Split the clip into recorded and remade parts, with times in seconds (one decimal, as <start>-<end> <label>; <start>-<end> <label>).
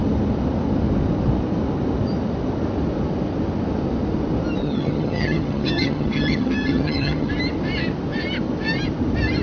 0.0-4.6 recorded; 4.6-7.3 remade; 7.3-9.4 recorded